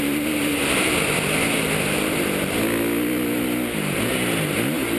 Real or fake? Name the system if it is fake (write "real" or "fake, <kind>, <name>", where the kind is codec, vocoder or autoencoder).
real